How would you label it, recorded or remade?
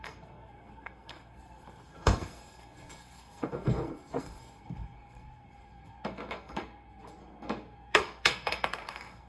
remade